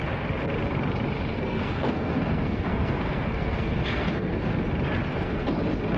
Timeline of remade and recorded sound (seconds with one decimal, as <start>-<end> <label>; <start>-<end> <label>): 0.0-1.3 recorded; 1.3-4.3 remade; 4.3-5.1 recorded; 5.1-5.6 remade; 5.6-6.0 recorded